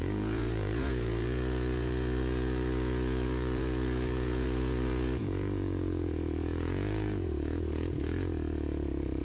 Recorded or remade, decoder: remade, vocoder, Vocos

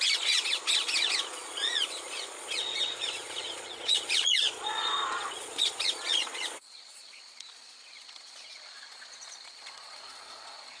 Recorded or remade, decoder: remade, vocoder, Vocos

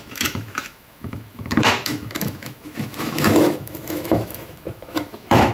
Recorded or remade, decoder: remade, autoencoder, DAC-VAE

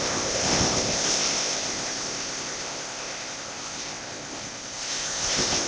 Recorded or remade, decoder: remade, codec, ZipCodec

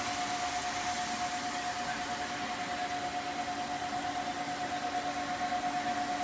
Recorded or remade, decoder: recorded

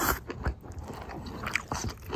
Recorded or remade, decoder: recorded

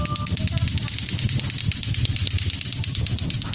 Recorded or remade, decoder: recorded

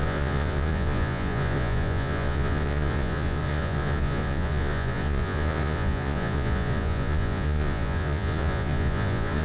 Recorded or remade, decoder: remade, vocoder, Vocos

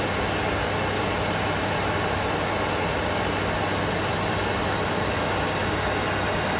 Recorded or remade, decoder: recorded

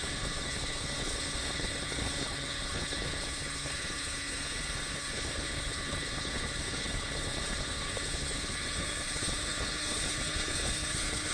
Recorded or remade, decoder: remade, codec, HILCodec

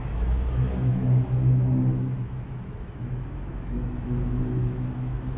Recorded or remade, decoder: remade, autoencoder, DAC-VAE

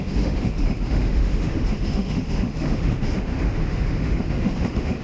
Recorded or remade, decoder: remade, autoencoder, DAC-VAE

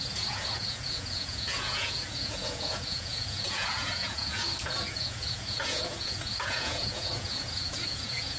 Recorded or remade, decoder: remade, vocoder, Vocos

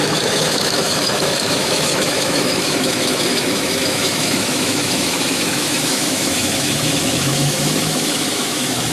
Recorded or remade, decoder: remade, autoencoder, DAC-VAE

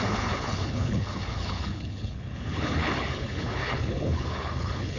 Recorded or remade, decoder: remade, codec, HILCodec